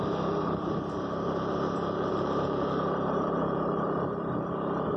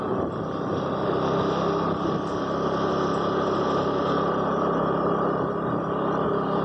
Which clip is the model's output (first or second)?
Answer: first